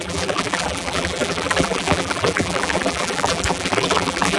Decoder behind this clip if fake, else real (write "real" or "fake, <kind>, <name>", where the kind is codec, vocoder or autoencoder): fake, vocoder, BigVGAN v2